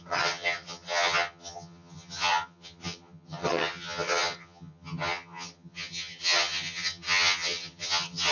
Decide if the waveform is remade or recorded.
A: remade